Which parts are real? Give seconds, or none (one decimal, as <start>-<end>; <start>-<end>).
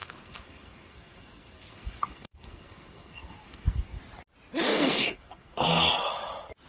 4.0-4.7; 6.1-6.7